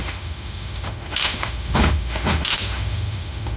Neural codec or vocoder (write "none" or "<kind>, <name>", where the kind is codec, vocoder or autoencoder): autoencoder, DAC-VAE